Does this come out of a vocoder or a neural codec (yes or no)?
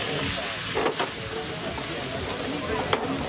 no